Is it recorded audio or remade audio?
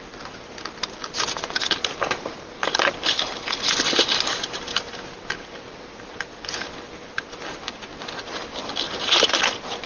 recorded